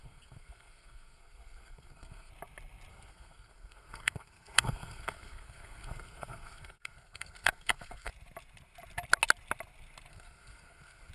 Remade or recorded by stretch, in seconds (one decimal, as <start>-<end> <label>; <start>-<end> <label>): 0.0-2.3 remade; 2.3-2.9 recorded; 2.9-8.1 remade; 8.1-10.1 recorded; 10.1-11.1 remade